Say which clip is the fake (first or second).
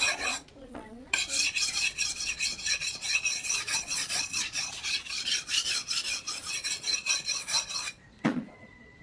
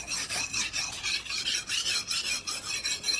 first